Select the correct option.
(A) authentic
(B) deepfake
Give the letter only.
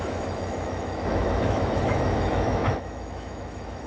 B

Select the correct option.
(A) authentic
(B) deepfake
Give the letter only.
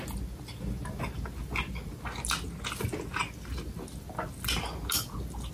A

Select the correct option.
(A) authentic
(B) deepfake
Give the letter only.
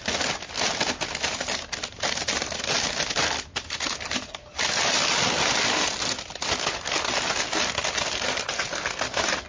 A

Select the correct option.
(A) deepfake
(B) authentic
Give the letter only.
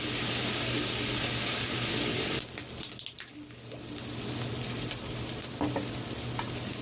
B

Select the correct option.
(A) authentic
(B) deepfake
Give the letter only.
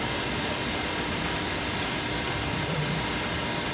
B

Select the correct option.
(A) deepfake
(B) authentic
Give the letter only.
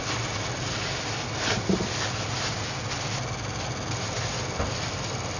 B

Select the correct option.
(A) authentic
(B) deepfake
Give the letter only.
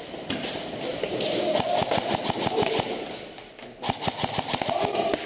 A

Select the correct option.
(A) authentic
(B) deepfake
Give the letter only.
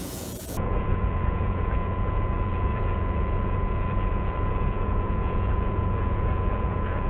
B